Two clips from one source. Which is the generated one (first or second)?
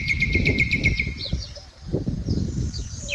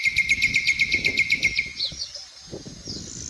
first